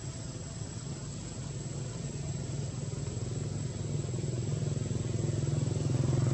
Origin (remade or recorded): recorded